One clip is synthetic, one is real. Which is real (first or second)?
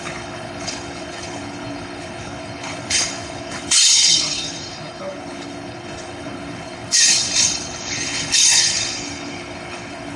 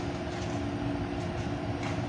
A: second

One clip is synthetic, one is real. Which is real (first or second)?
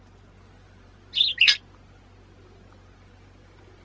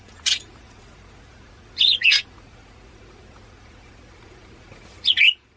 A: first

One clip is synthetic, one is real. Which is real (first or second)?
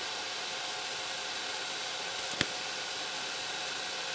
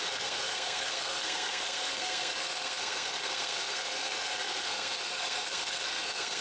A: first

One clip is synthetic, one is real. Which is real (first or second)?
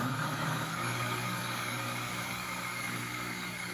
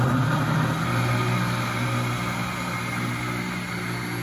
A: second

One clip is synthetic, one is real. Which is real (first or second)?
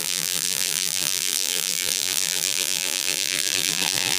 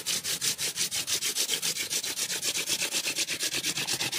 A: second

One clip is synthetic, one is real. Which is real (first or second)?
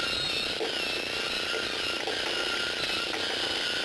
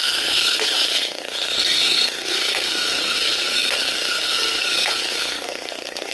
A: first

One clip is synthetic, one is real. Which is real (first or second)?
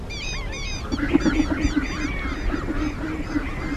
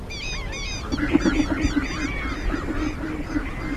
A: second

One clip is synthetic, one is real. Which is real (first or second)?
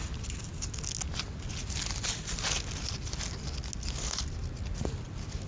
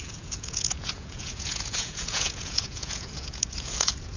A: first